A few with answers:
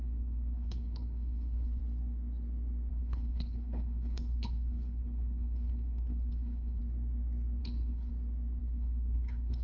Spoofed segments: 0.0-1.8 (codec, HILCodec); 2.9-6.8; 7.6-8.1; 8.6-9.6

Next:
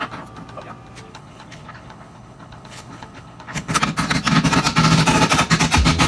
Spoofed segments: 1.1-3.8 (codec, HILCodec)